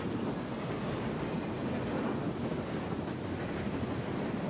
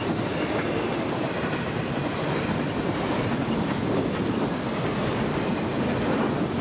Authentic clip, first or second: first